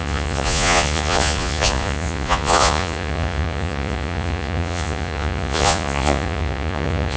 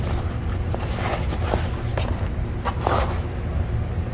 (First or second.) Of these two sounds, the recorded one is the second